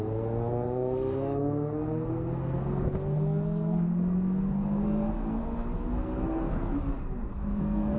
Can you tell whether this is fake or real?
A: fake